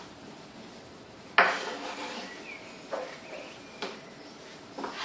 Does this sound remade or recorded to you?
recorded